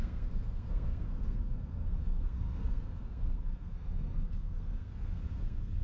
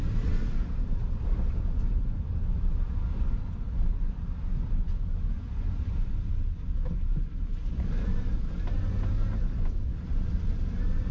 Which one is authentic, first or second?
second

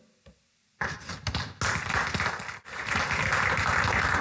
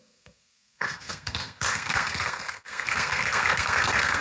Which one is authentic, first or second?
first